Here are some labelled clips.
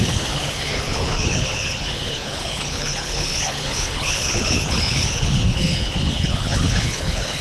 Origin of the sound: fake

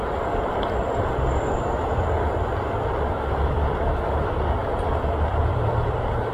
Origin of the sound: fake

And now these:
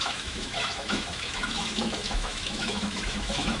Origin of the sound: fake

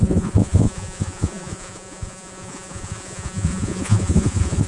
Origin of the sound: fake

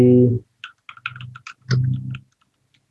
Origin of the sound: real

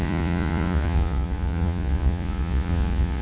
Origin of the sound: fake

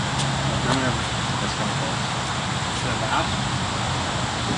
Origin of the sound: real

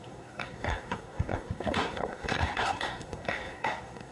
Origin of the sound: fake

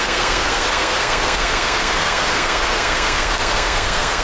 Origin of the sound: fake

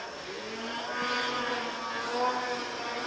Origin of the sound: real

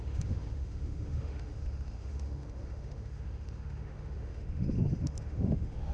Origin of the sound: fake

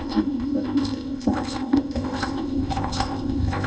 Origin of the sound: fake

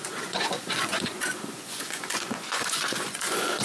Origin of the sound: fake